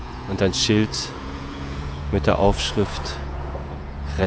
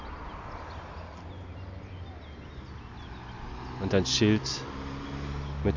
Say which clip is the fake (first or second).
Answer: first